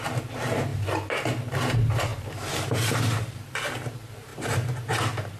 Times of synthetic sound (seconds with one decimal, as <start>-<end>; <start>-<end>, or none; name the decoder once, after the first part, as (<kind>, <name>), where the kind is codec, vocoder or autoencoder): 2.1-3.6 (vocoder, BigVGAN v2)